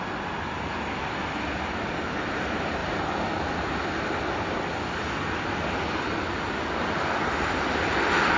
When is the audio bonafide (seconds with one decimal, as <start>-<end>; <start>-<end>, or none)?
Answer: 0.0-8.4